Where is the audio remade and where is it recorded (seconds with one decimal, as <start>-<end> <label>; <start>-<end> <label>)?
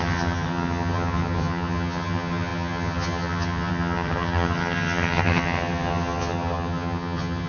0.0-7.5 remade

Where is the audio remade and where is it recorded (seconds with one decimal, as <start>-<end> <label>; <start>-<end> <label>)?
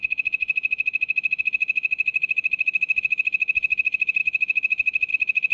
0.0-5.5 recorded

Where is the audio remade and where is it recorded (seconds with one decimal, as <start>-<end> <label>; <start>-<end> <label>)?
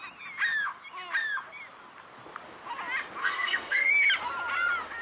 0.0-3.2 recorded; 3.2-3.9 remade; 3.9-5.0 recorded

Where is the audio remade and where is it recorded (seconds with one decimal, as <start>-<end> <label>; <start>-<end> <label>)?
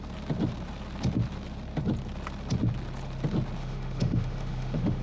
0.0-3.6 recorded; 3.6-5.0 remade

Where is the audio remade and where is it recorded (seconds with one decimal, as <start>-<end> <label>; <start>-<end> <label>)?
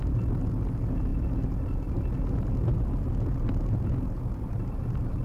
0.0-5.2 recorded